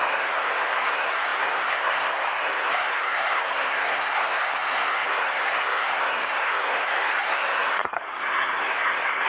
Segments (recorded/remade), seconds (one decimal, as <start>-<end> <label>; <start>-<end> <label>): 0.0-9.3 remade